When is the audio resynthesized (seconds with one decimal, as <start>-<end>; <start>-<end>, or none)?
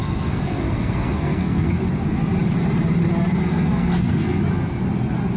0.0-1.8; 3.4-4.4